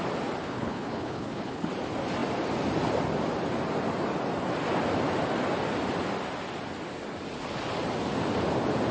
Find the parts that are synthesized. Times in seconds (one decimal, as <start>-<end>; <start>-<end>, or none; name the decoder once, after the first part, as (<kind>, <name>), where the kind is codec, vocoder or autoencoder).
0.4-1.7 (codec, HILCodec)